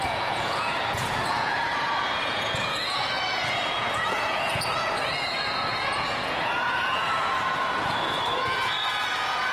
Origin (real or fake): fake